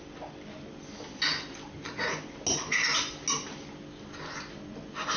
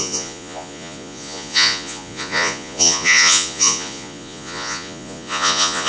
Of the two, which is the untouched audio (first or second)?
first